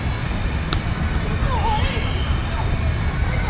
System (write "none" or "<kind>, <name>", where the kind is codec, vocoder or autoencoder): none